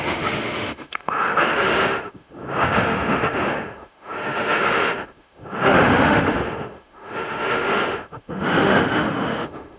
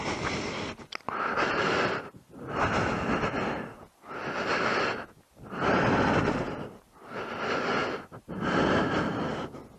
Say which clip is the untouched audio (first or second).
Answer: second